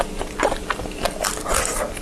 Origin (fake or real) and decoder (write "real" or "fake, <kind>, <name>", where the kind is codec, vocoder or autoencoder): real